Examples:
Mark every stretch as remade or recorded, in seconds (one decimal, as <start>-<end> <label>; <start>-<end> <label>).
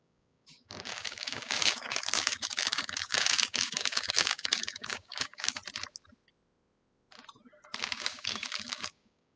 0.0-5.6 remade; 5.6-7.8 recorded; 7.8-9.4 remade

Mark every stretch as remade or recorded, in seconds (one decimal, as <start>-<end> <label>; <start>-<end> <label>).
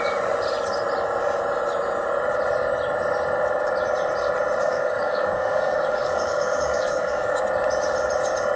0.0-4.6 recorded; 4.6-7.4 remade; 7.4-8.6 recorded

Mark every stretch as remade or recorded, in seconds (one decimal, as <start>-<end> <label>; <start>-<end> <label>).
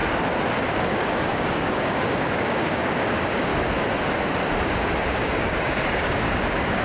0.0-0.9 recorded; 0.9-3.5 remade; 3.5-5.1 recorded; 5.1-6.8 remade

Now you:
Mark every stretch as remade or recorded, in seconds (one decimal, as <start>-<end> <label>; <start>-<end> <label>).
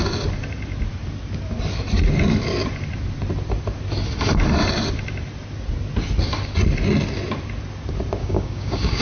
0.0-8.2 recorded; 8.2-9.0 remade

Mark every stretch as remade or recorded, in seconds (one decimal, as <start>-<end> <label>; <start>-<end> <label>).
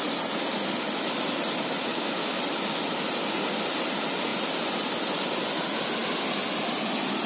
0.0-1.9 recorded; 1.9-2.4 remade; 2.4-7.3 recorded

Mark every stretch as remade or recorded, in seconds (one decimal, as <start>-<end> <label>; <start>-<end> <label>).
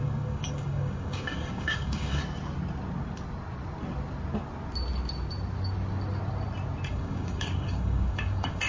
0.0-2.2 remade; 2.2-6.9 recorded; 6.9-8.7 remade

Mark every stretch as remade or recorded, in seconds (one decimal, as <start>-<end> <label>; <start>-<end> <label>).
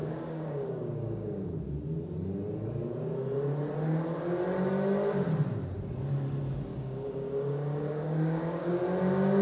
0.0-1.6 remade; 1.6-6.7 recorded; 6.7-8.7 remade; 8.7-9.4 recorded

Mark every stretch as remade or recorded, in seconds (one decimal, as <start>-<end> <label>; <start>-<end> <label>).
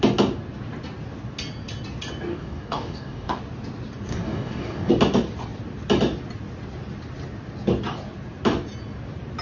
0.0-2.3 recorded; 2.3-3.4 remade; 3.4-4.1 recorded; 4.1-4.9 remade; 4.9-9.4 recorded